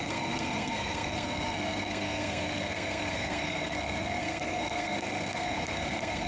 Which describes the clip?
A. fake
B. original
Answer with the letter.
A